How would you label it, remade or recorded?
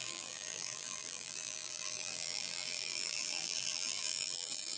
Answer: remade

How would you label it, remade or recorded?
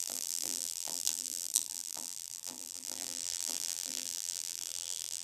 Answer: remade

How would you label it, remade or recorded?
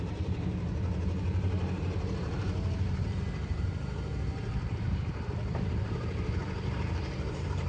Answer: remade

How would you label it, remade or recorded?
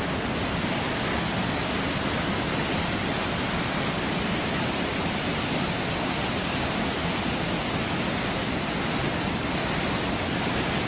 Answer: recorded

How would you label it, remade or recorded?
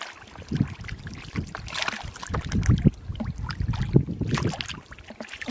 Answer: recorded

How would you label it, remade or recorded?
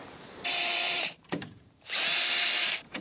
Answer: remade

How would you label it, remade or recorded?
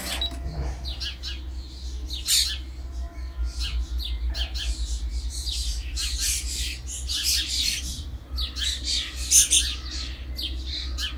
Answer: recorded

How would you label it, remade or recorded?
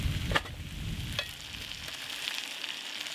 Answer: recorded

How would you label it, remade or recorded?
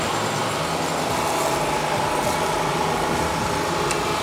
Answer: recorded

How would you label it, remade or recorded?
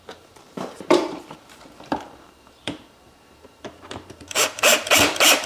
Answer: remade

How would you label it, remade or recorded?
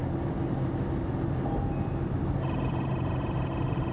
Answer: recorded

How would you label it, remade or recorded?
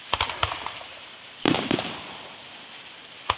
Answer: remade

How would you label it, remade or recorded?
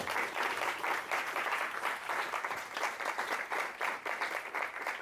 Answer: remade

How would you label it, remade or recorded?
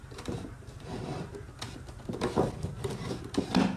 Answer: remade